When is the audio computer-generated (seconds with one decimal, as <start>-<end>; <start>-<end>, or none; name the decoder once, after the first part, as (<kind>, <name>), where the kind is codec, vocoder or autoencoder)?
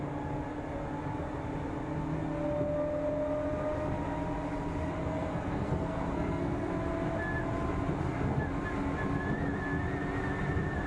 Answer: 5.0-6.7 (codec, SNAC)